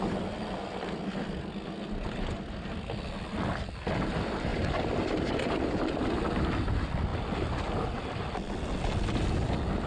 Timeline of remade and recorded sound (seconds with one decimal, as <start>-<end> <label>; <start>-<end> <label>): 0.0-9.9 recorded